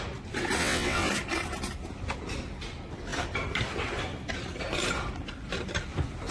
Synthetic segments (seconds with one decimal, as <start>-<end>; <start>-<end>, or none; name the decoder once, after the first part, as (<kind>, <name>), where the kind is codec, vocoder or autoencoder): 0.6-1.1 (vocoder, WaveNeXt)